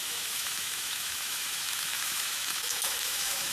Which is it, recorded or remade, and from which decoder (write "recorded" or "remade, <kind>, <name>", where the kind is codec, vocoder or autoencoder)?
remade, autoencoder, DAC-VAE